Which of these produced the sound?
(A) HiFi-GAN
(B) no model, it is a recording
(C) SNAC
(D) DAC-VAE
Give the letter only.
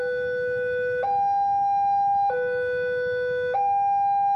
B